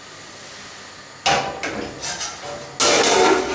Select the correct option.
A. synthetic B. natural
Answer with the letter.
B